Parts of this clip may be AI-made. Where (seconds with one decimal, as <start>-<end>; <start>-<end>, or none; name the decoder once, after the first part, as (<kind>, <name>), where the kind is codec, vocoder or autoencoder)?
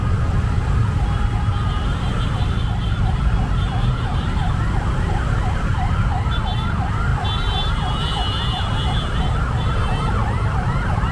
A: 0.8-1.5 (vocoder, BigVGAN v2)